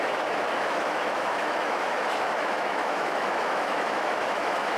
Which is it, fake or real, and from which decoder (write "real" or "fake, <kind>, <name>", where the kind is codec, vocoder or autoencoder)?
fake, autoencoder, DAC-VAE